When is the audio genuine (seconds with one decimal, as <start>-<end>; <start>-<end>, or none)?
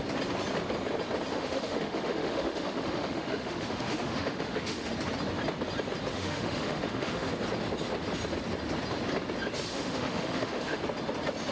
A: 0.0-1.3; 4.9-6.1; 7.3-9.7; 10.8-11.5